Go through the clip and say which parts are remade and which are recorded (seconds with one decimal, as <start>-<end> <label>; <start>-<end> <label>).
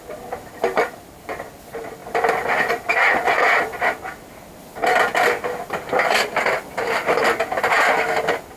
0.0-2.0 recorded; 2.0-2.7 remade; 2.7-8.6 recorded